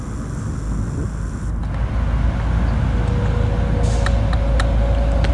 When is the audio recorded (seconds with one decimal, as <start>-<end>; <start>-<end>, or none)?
0.0-5.3